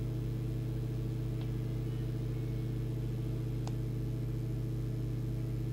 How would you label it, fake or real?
real